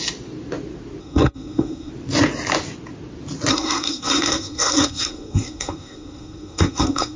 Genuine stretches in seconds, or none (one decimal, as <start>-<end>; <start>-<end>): 0.0-1.0; 1.9-3.5